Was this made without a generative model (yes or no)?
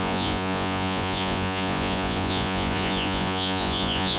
no